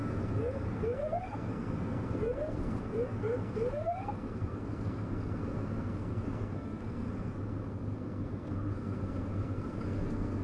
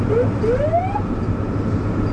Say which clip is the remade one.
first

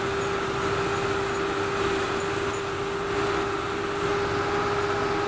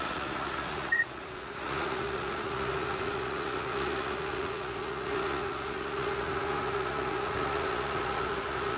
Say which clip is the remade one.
second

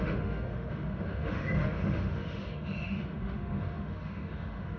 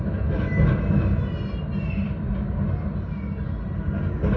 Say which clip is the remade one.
first